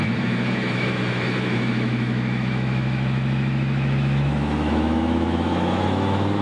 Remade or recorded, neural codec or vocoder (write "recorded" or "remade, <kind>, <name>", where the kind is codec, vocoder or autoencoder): remade, autoencoder, DAC-VAE